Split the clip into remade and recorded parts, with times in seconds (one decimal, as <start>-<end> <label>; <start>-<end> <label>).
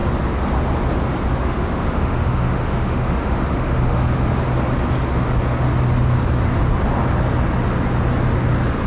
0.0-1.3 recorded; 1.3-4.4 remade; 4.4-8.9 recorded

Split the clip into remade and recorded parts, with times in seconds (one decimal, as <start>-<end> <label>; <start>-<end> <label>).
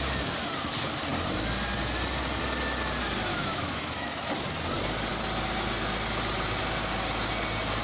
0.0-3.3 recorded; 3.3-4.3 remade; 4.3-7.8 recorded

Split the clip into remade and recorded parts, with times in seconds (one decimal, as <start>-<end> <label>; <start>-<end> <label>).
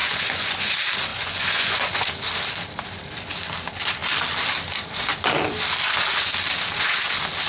0.0-0.7 remade; 0.7-1.1 recorded; 1.1-2.1 remade; 2.1-7.5 recorded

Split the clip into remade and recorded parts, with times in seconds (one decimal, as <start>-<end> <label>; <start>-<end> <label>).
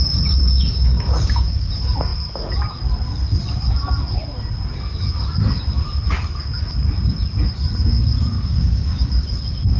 0.0-0.4 recorded; 0.4-1.7 remade; 1.7-8.3 recorded; 8.3-9.1 remade; 9.1-9.8 recorded